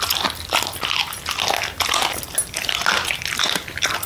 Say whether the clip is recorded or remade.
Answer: recorded